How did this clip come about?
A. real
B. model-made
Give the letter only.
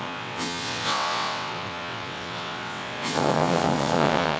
B